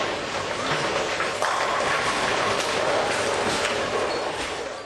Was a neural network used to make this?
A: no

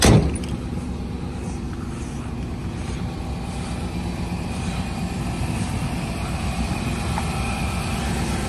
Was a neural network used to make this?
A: no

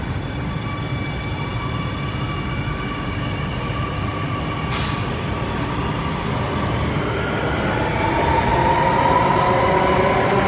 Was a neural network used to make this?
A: no